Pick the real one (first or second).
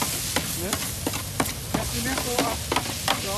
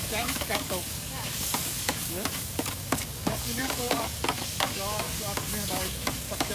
first